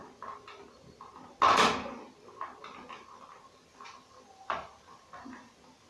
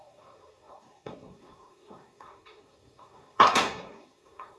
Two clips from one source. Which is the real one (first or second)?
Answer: first